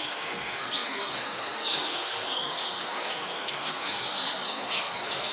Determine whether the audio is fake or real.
fake